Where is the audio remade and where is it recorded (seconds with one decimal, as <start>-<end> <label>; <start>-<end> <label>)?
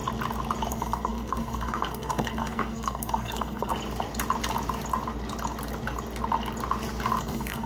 0.0-0.7 recorded; 0.7-3.7 remade; 3.7-7.2 recorded; 7.2-7.7 remade